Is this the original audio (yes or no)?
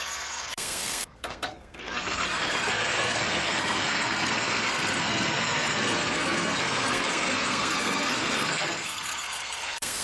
no